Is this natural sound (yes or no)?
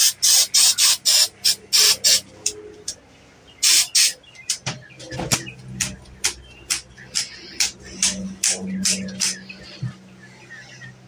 yes